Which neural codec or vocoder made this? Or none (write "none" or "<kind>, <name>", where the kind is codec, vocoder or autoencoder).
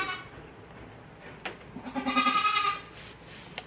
none